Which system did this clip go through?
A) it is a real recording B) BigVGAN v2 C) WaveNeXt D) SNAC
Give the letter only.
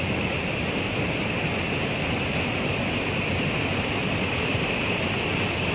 A